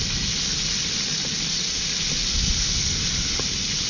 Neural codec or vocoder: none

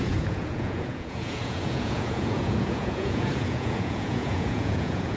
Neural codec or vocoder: vocoder, Vocos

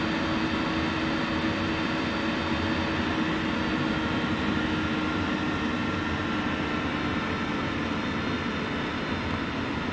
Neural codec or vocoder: none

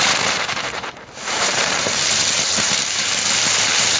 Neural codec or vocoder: vocoder, BigVGAN v2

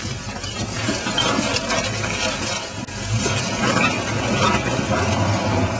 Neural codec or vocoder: none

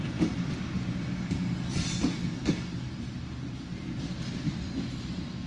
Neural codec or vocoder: none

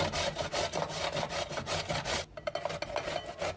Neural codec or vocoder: none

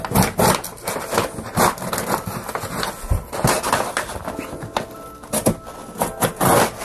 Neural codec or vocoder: none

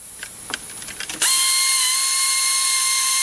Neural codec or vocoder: none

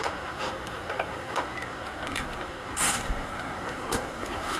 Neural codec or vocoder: codec, SNAC